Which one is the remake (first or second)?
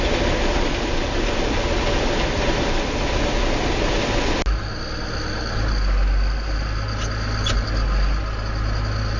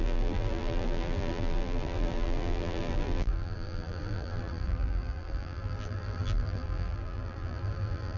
second